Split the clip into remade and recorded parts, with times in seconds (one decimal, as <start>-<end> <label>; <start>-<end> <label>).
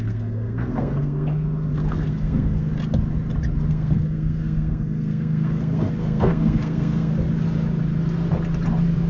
0.0-2.7 remade; 2.7-3.7 recorded; 3.7-7.1 remade; 7.1-9.1 recorded